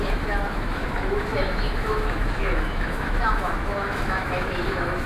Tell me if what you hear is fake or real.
fake